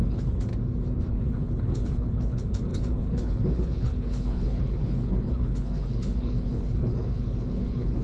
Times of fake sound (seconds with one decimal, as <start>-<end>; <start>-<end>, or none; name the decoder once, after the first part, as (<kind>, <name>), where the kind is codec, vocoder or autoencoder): 0.0-0.5 (codec, HILCodec); 1.1-8.0